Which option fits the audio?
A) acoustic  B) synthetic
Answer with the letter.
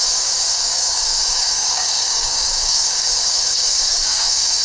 B